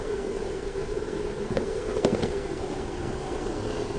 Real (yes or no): no